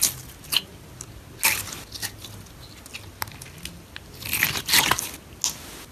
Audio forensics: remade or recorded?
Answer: recorded